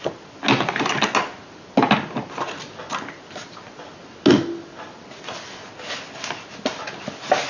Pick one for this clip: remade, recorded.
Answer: recorded